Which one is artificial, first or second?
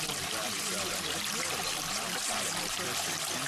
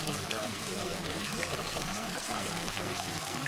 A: second